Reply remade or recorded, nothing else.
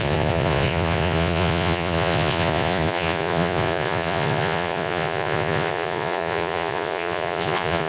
remade